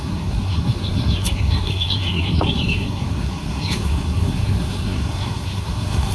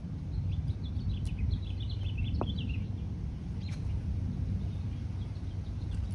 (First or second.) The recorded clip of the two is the second